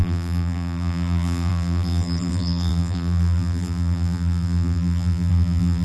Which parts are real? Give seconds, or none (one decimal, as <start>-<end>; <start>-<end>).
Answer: none